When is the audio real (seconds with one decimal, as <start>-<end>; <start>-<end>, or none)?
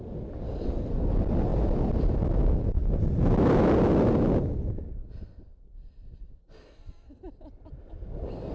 0.0-8.5